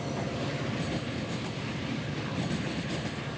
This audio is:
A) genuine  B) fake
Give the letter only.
A